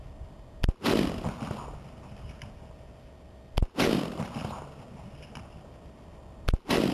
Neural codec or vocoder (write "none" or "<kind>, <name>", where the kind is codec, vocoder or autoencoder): none